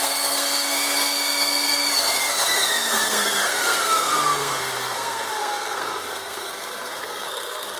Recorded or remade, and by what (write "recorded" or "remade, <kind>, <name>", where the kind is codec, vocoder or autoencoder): remade, codec, SNAC